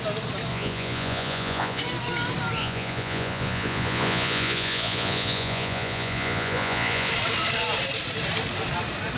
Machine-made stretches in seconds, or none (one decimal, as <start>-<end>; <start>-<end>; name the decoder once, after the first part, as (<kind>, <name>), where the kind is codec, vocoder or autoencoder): 0.5-1.8 (vocoder, Vocos); 2.6-7.1